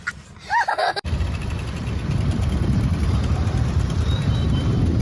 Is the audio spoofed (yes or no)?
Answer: yes